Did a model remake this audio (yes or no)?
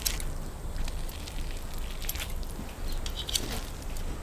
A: no